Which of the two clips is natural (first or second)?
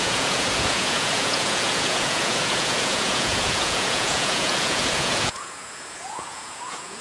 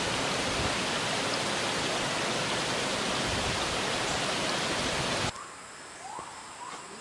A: second